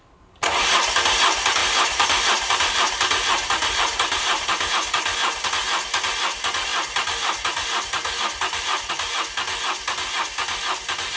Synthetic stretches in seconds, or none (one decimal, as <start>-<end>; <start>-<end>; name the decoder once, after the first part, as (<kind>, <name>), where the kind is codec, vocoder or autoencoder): 1.6-4.7 (vocoder, BigVGAN v2)